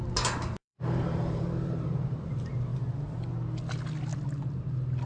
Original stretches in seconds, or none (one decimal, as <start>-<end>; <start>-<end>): 0.0-0.6; 2.3-2.7; 3.3-5.1

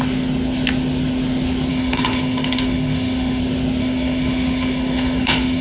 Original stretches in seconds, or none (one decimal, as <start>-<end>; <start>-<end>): 0.0-1.7; 3.4-3.8

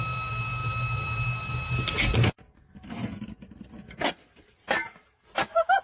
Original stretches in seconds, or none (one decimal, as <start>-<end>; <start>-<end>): 0.0-5.8

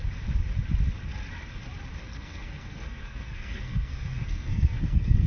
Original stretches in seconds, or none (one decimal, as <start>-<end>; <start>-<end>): 0.0-2.0

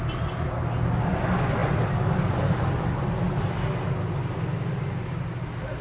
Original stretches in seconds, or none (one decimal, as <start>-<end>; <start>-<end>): 0.0-5.8

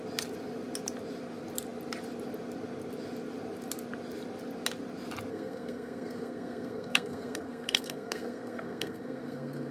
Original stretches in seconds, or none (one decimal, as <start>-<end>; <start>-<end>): 0.0-5.3